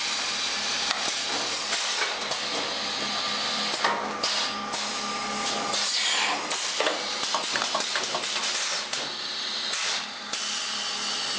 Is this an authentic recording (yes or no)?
yes